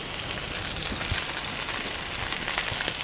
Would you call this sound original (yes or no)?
yes